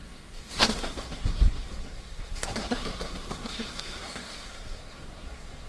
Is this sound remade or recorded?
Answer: remade